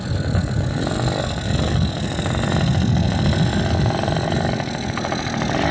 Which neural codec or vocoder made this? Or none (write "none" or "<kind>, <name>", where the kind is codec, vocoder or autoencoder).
none